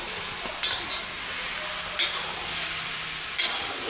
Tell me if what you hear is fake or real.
real